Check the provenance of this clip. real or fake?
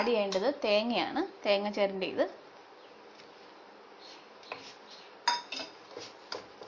real